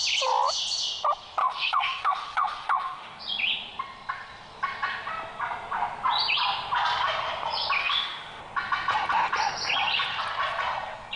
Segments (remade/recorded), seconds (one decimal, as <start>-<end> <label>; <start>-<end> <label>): 0.0-1.4 recorded; 1.4-3.2 remade; 3.2-7.8 recorded; 7.8-8.4 remade; 8.4-11.2 recorded

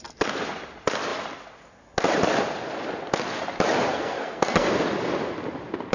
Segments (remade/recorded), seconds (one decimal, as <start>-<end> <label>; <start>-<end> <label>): 0.0-3.9 recorded; 3.9-4.7 remade; 4.7-5.9 recorded

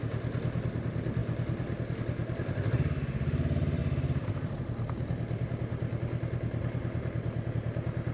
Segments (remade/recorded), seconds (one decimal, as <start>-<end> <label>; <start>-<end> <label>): 0.0-8.1 recorded

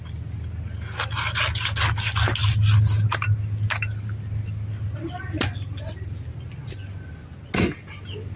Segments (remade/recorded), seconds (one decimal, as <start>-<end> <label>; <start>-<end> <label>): 0.0-8.4 recorded

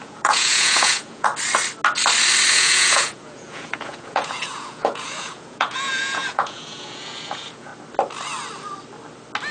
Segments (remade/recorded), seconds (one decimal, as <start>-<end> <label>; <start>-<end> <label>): 0.0-1.3 remade; 1.3-2.5 recorded; 2.5-7.7 remade; 7.7-9.5 recorded

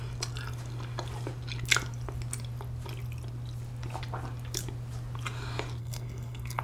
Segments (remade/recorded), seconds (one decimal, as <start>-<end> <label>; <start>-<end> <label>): 0.0-5.8 recorded; 5.8-6.6 remade